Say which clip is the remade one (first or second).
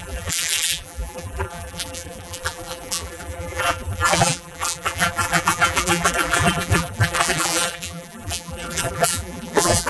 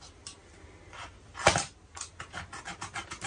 first